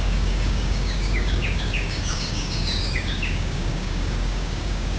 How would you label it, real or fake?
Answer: fake